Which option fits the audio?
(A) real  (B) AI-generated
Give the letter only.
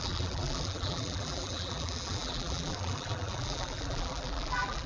B